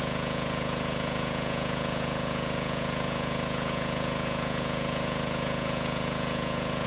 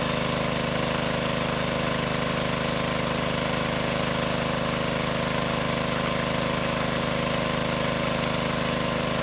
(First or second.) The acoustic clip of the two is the second